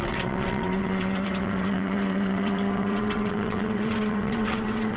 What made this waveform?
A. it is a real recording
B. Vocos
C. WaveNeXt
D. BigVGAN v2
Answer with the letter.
C